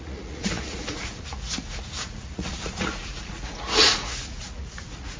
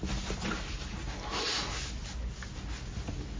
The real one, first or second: second